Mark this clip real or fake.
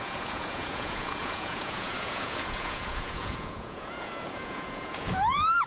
fake